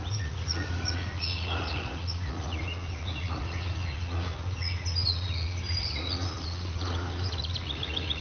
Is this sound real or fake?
fake